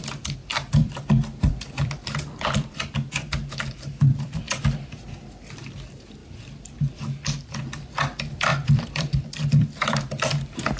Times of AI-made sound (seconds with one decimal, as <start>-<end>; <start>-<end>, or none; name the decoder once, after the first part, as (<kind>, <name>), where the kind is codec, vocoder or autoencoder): 0.4-4.6 (vocoder, BigVGAN v2); 6.2-7.0; 8.5-10.8